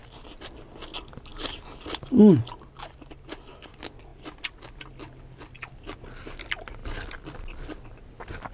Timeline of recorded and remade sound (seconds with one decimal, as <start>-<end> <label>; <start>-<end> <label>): 0.0-0.7 remade; 0.7-4.1 recorded; 4.1-4.6 remade; 4.6-8.5 recorded